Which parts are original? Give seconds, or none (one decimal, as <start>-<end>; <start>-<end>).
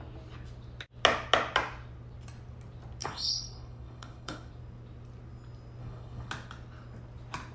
0.0-3.0; 4.5-5.8; 6.3-7.5